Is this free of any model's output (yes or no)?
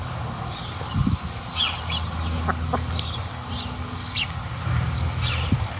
yes